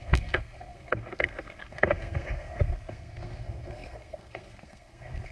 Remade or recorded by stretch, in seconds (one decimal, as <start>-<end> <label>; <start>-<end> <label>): 0.0-5.3 remade